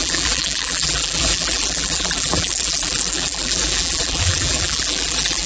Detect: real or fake fake